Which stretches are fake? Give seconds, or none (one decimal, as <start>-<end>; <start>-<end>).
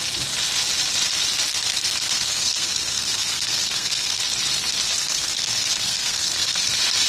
1.5-4.2; 5.0-6.6